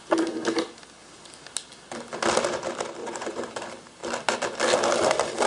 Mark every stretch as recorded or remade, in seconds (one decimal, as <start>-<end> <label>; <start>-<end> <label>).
0.0-3.0 recorded; 3.0-3.5 remade; 3.5-5.5 recorded